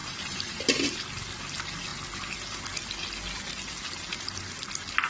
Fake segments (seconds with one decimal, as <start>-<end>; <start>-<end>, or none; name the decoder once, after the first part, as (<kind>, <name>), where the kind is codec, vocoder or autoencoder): 0.0-0.6 (vocoder, BigVGAN v2)